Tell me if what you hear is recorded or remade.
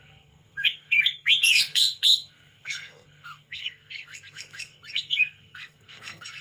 remade